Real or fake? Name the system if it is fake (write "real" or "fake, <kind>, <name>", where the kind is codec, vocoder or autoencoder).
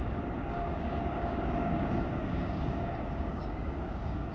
fake, codec, DAC